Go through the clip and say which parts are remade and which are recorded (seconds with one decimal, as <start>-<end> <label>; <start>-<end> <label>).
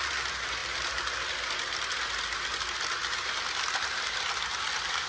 0.0-5.1 recorded